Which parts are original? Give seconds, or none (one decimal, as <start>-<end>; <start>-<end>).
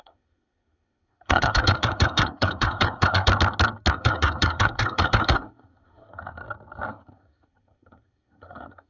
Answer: 3.3-3.9; 6.4-6.9